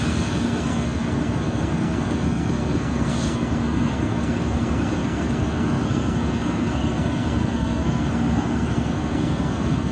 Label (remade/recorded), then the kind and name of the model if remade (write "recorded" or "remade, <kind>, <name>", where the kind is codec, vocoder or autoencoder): remade, codec, SNAC